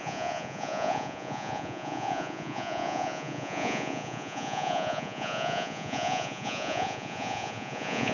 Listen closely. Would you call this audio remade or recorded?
remade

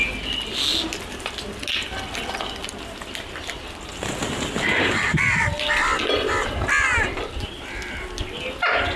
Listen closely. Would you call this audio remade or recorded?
recorded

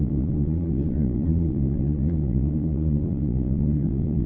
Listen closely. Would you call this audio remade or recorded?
remade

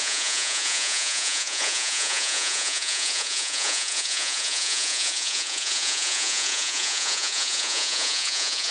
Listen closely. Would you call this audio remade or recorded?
remade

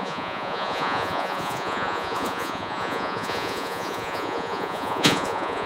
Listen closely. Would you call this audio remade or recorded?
remade